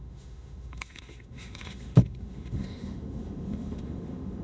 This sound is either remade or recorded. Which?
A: remade